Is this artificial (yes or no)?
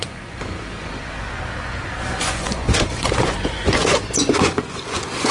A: yes